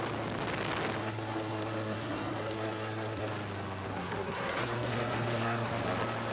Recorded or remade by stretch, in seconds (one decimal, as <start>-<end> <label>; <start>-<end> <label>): 0.0-1.0 recorded; 1.0-3.3 remade; 3.3-3.9 recorded; 3.9-5.7 remade; 5.7-6.3 recorded